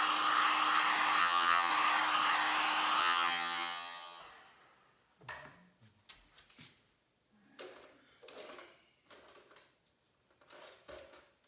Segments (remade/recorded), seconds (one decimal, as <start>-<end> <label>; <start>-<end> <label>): 0.0-1.2 recorded; 1.2-1.7 remade; 1.7-3.0 recorded; 3.0-4.2 remade; 4.2-11.5 recorded